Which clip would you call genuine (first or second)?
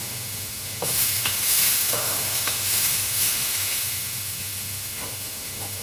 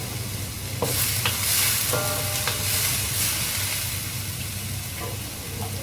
second